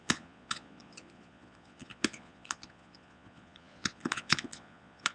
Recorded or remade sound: remade